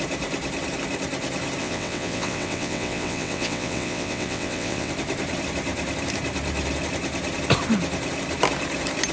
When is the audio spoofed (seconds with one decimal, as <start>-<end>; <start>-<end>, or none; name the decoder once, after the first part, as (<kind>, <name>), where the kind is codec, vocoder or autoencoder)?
1.6-4.9 (vocoder, WaveNeXt)